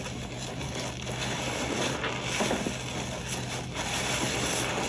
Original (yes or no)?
yes